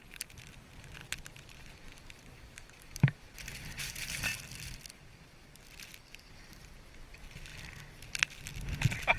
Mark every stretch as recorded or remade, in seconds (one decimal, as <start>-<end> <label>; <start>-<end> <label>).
0.0-1.0 remade; 1.0-1.6 recorded; 1.6-4.3 remade; 4.3-6.3 recorded; 6.3-7.5 remade; 7.5-9.2 recorded